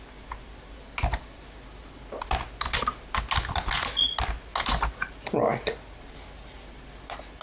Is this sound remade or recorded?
recorded